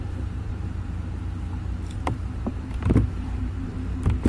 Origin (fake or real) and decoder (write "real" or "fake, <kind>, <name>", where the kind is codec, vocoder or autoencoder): fake, vocoder, BigVGAN v2